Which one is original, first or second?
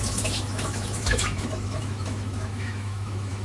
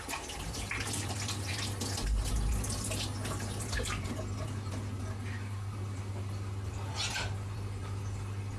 second